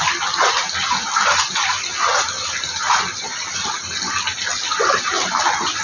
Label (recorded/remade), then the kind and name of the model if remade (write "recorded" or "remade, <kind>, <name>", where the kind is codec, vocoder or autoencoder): recorded